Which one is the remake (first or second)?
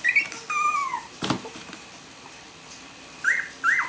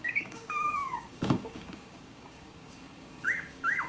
second